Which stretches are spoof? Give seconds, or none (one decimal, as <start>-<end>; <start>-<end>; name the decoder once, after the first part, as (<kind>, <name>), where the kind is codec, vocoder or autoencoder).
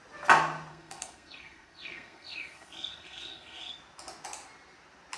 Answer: 0.7-3.8 (codec, SNAC)